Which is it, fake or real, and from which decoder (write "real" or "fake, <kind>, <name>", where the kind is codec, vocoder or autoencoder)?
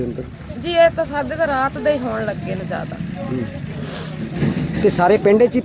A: real